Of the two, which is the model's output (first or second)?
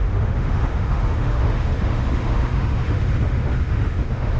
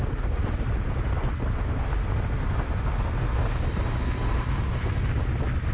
first